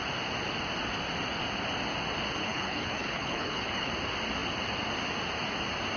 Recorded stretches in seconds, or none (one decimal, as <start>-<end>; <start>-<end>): 0.0-2.4; 3.9-6.0